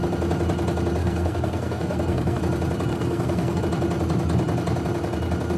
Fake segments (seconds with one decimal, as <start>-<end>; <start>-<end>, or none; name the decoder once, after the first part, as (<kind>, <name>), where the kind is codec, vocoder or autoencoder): 1.0-2.4 (codec, SNAC); 2.9-3.6